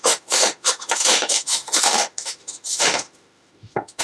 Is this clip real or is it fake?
fake